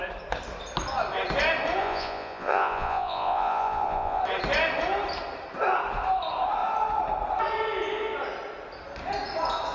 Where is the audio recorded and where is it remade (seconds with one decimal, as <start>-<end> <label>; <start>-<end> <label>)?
0.0-1.8 recorded; 1.8-4.2 remade; 4.2-9.7 recorded

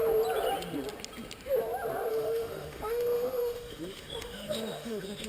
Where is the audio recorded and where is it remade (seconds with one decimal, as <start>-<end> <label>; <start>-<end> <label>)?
0.0-2.1 recorded; 2.1-5.3 remade

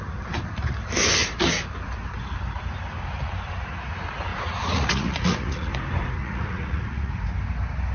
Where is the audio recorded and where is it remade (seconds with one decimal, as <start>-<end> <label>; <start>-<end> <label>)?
0.0-4.3 recorded; 4.3-5.7 remade; 5.7-6.2 recorded; 6.2-7.1 remade; 7.1-7.9 recorded

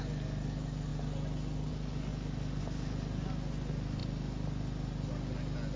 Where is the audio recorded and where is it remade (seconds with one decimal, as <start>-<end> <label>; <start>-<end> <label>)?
0.0-5.8 recorded

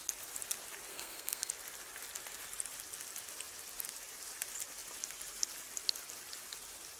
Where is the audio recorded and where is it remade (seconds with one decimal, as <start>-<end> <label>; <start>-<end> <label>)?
0.0-0.9 recorded; 0.9-1.5 remade; 1.5-7.0 recorded

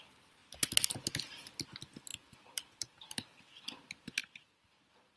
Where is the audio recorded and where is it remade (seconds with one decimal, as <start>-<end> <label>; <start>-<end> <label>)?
0.0-2.1 recorded; 2.1-3.6 remade; 3.6-4.2 recorded; 4.2-5.2 remade

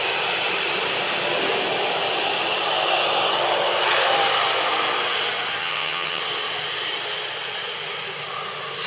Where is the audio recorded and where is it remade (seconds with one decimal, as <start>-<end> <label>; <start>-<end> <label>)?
0.0-5.6 recorded; 5.6-6.2 remade; 6.2-8.9 recorded

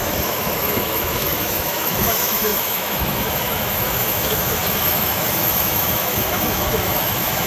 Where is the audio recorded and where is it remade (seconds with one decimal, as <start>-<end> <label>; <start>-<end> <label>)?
0.0-7.5 remade